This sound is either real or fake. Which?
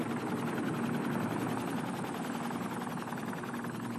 real